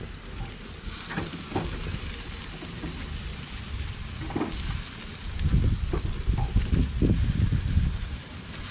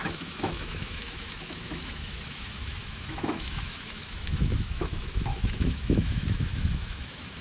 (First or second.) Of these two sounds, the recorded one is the first